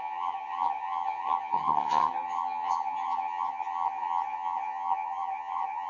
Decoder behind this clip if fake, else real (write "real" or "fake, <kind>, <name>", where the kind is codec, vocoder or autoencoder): fake, vocoder, HiFi-GAN